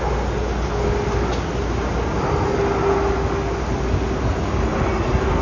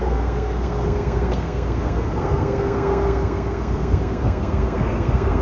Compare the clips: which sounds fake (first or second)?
second